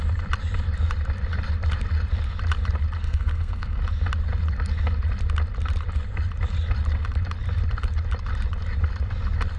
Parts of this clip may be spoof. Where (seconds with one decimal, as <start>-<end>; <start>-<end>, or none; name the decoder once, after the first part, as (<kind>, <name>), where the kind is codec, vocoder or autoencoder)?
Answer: 3.0-3.8 (codec, SNAC)